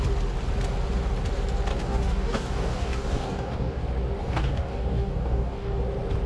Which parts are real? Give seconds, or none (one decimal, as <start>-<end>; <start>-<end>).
0.0-1.7; 3.8-4.2; 5.8-6.3